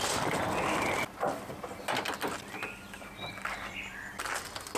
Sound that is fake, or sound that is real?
real